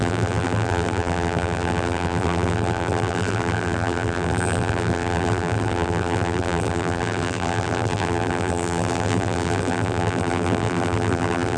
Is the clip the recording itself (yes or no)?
no